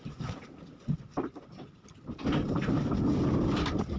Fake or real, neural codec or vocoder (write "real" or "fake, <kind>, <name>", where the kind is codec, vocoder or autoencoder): real